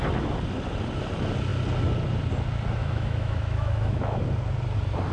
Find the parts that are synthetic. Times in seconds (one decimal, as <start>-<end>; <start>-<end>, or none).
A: 2.8-4.2